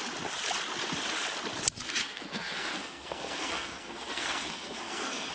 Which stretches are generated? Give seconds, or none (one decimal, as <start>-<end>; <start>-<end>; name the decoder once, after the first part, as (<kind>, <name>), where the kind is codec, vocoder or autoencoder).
2.0-5.3 (codec, SNAC)